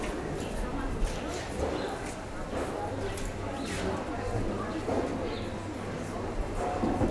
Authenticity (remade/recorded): recorded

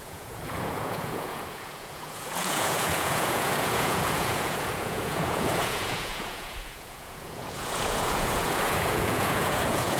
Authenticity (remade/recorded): remade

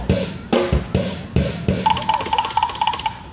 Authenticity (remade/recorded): recorded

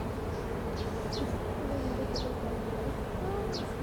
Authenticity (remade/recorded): recorded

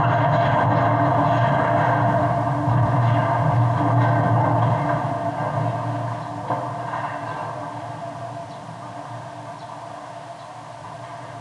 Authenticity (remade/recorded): recorded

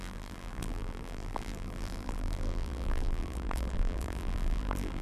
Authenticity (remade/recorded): remade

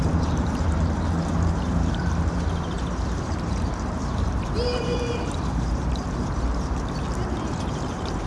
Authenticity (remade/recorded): remade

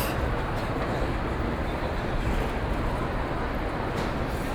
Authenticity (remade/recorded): recorded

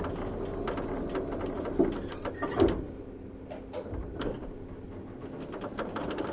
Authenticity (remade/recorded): recorded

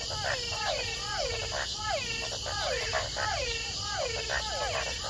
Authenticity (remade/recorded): recorded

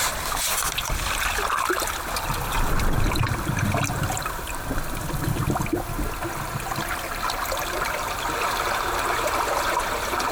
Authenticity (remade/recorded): recorded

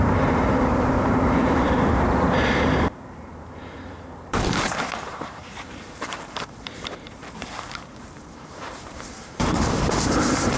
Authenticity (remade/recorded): remade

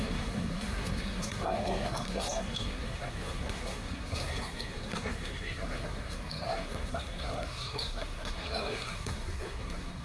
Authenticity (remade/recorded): remade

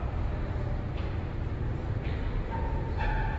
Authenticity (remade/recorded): recorded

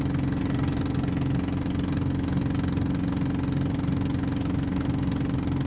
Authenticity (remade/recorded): recorded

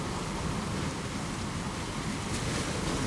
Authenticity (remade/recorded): recorded